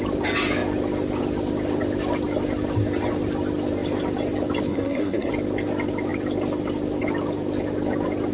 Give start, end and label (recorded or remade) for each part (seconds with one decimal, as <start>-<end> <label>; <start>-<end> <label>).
0.0-4.7 recorded; 4.7-5.3 remade; 5.3-8.3 recorded